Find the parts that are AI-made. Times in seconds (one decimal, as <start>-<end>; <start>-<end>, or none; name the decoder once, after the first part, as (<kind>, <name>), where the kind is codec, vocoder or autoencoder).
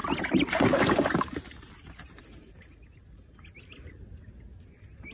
0.0-2.2 (vocoder, BigVGAN v2)